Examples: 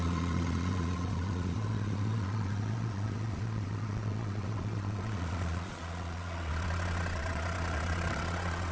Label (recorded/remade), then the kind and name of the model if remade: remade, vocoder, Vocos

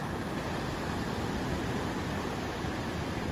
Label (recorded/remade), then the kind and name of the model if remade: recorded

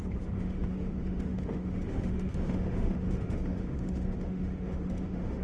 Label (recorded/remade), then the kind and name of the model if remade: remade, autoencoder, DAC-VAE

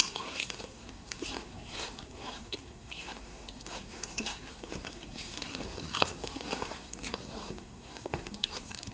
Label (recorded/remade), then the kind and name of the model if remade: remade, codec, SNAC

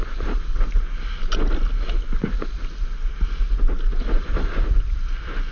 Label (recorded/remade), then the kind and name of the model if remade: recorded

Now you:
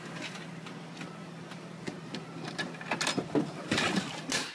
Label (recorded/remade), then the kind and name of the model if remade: recorded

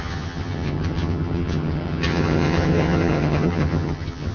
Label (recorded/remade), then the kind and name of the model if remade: remade, vocoder, HiFi-GAN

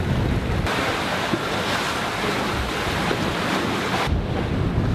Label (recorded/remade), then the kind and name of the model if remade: recorded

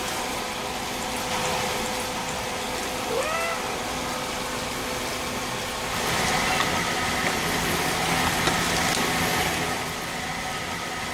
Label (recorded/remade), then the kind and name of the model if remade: recorded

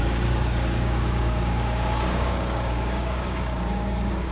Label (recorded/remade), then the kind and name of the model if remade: remade, codec, DAC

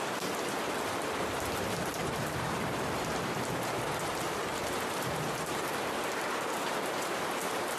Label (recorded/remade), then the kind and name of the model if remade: remade, vocoder, BigVGAN v2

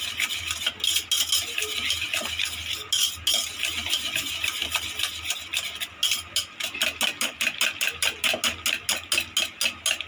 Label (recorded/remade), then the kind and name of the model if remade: recorded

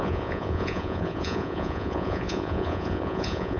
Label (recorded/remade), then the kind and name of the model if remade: remade, vocoder, Vocos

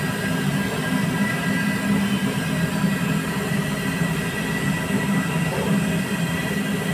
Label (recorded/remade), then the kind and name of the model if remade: recorded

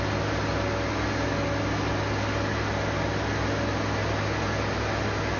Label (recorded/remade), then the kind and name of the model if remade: recorded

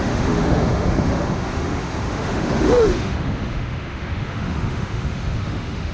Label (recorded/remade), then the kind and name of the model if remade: remade, autoencoder, DAC-VAE